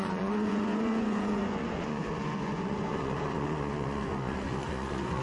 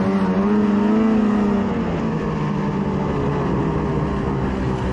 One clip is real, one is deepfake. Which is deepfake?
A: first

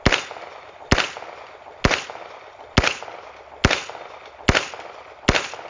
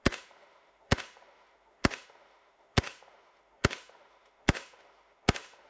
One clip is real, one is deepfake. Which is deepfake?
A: second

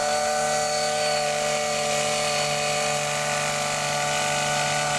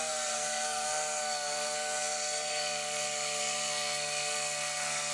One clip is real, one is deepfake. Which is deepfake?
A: second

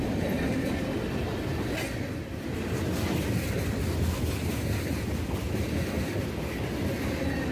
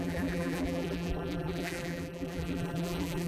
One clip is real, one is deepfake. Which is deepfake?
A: second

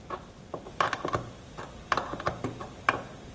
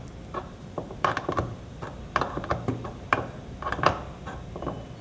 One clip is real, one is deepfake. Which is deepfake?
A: second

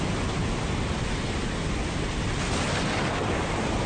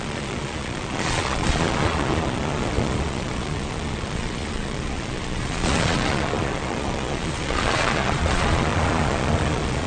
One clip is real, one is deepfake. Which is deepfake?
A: second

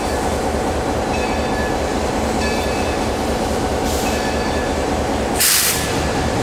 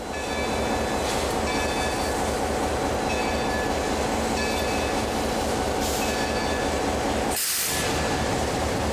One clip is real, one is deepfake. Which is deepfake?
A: first